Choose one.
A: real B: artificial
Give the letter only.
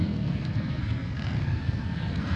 B